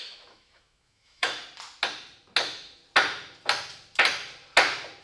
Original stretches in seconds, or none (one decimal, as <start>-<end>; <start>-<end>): 1.4-2.4; 2.8-5.0